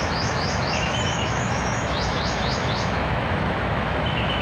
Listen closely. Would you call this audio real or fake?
fake